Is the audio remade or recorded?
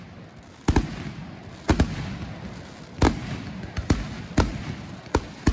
recorded